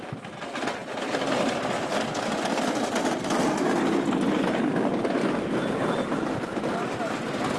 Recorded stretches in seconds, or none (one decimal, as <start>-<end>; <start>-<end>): 0.0-7.6